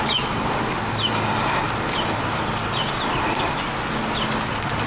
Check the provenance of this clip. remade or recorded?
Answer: recorded